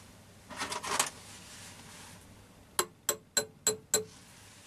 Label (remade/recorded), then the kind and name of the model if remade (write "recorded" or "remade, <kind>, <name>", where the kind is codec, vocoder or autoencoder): recorded